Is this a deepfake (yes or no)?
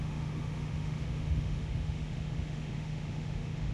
yes